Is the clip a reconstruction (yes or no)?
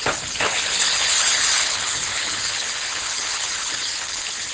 yes